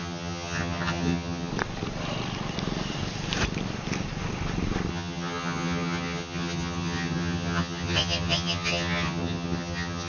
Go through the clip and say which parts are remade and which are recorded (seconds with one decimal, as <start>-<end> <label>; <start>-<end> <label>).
0.0-1.5 remade; 1.5-4.9 recorded; 4.9-10.1 remade